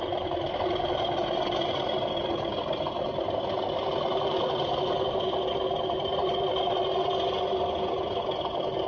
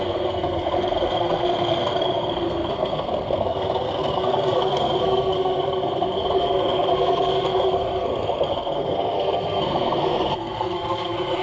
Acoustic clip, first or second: first